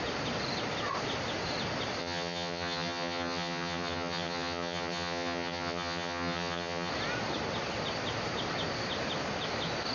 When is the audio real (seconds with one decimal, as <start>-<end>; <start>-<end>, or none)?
0.0-2.0; 6.9-9.9